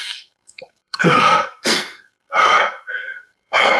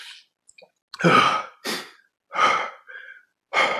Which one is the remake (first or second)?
first